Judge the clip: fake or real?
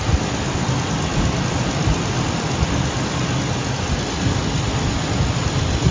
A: real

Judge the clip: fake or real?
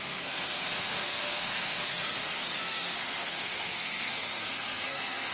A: fake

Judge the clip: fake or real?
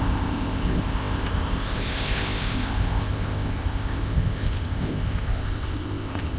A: fake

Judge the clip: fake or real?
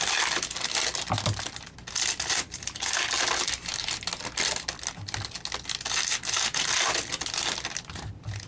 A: real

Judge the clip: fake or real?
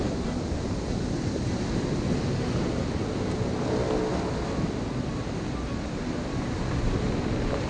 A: real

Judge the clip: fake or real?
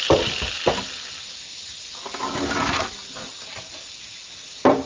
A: real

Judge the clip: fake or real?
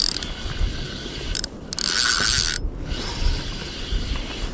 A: real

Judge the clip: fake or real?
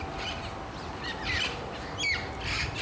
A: real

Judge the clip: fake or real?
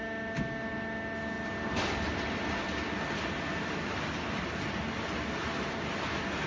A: real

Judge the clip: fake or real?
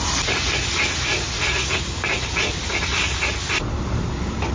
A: real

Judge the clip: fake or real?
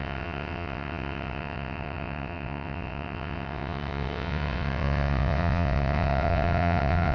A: fake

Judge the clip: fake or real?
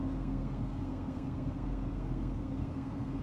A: fake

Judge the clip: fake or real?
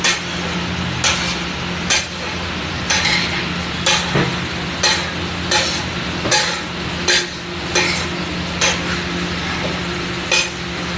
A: real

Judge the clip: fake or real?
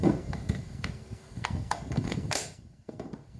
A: fake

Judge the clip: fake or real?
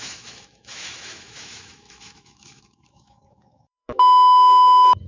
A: fake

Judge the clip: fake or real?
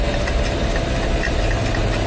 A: real